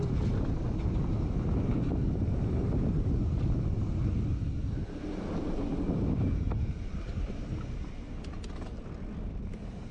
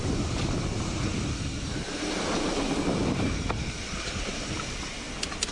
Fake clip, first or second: second